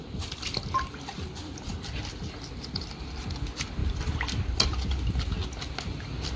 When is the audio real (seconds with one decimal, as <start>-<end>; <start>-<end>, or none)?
0.0-3.8; 5.5-6.4